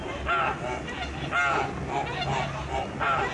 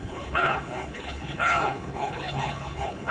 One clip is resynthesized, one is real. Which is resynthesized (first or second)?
second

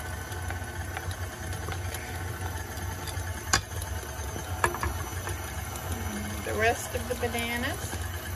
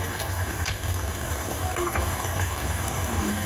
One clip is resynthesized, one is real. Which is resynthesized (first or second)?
second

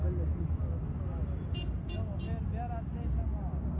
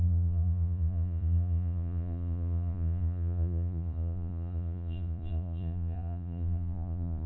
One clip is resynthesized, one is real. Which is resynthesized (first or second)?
second